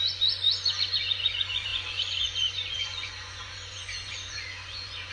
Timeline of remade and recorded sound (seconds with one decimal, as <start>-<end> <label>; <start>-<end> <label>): 0.0-5.1 remade